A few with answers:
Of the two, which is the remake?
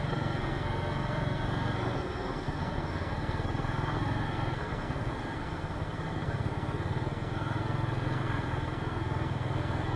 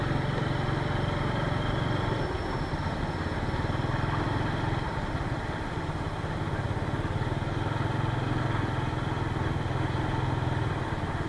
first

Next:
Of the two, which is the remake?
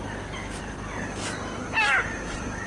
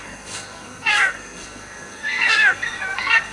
second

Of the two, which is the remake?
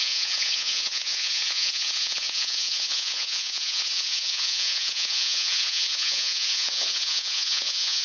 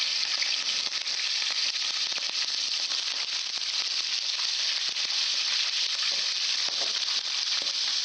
first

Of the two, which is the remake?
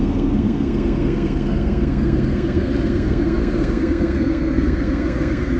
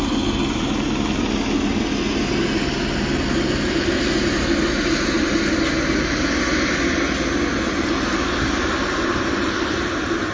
first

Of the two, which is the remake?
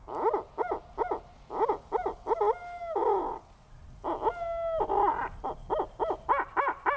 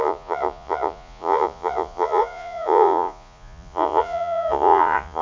second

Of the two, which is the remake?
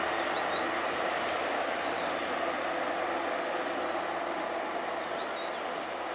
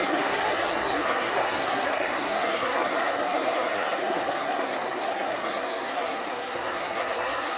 second